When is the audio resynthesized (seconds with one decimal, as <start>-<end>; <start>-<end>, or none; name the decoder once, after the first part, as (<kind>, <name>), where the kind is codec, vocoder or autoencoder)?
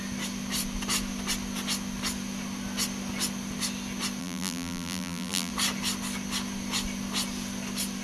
4.2-5.5 (vocoder, BigVGAN v2)